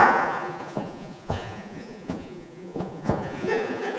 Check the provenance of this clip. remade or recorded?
remade